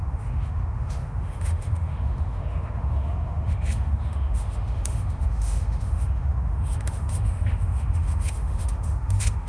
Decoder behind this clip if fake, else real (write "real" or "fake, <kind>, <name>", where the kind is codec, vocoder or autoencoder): fake, autoencoder, DAC-VAE